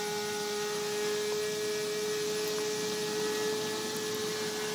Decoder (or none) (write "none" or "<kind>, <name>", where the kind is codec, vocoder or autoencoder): none